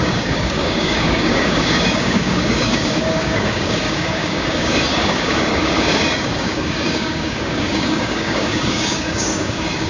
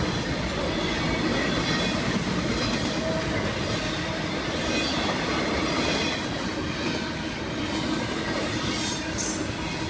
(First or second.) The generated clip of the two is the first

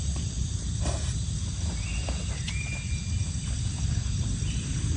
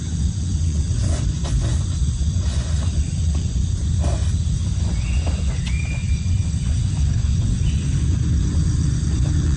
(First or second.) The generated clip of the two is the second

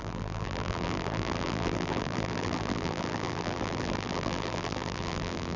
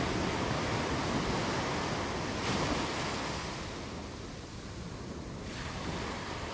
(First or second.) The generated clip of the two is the first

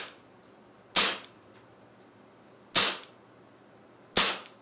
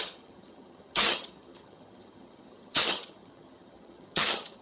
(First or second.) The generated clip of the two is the second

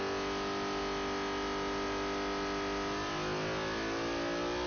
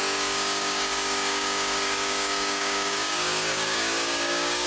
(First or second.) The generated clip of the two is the second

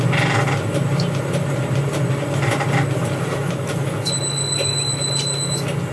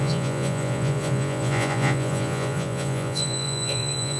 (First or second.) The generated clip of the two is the second